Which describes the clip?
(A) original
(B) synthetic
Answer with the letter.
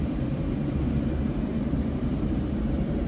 B